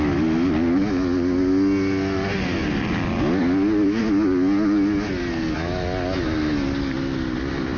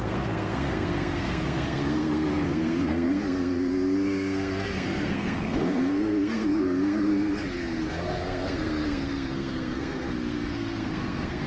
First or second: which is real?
first